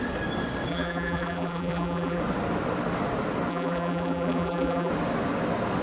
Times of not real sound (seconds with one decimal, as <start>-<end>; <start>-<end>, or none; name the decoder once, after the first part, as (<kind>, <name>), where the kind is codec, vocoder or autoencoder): 0.7-2.2 (vocoder, BigVGAN v2); 3.5-4.9

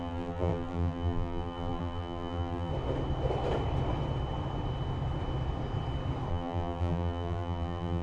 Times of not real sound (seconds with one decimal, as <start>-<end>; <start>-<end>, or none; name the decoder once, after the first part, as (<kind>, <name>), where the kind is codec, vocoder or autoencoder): 0.0-2.7 (vocoder, BigVGAN v2); 6.3-8.0

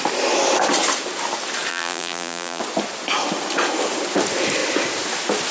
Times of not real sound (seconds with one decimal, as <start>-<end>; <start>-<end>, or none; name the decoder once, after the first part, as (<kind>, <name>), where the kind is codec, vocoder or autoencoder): 1.7-2.6 (vocoder, BigVGAN v2)

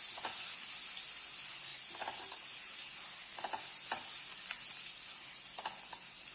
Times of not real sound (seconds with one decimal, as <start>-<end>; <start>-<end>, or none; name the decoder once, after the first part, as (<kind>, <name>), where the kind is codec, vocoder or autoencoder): 1.7-2.3 (vocoder, BigVGAN v2)

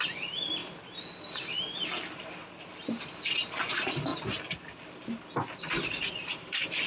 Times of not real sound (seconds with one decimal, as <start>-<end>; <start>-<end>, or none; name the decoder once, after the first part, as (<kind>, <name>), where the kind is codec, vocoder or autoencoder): 0.0-0.6 (vocoder, BigVGAN v2); 2.8-4.1; 5.7-6.9

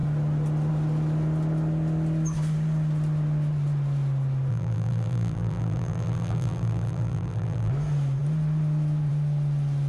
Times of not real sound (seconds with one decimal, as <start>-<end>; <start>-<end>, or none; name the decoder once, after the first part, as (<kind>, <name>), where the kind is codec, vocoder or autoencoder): 4.5-7.7 (vocoder, BigVGAN v2)

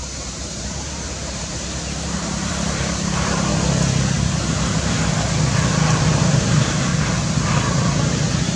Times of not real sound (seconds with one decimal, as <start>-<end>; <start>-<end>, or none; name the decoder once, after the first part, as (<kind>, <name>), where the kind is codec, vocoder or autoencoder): 0.0-3.5 (vocoder, BigVGAN v2); 6.0-6.9

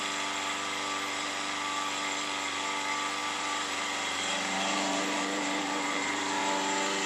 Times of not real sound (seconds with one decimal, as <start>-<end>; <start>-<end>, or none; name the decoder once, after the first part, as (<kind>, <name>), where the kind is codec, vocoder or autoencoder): 3.2-6.4 (vocoder, BigVGAN v2)